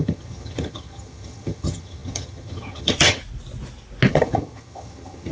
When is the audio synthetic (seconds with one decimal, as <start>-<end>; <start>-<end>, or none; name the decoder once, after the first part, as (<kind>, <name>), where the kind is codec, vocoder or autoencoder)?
0.0-3.2 (vocoder, HiFi-GAN); 4.1-5.3